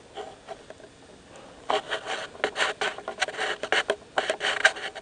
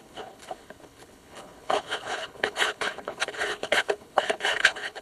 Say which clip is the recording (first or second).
first